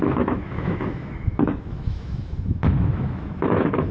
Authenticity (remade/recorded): remade